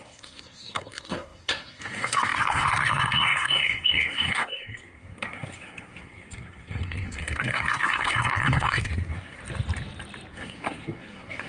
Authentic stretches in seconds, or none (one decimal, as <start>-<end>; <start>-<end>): 9.4-10.3